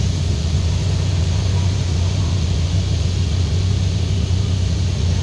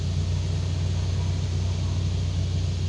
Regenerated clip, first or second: first